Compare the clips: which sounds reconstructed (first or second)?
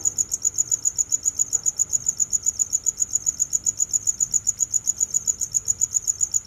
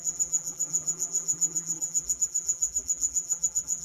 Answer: second